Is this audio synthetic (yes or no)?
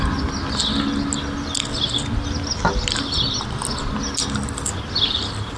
no